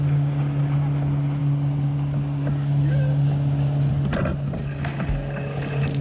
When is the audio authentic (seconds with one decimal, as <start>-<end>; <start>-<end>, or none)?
0.0-6.0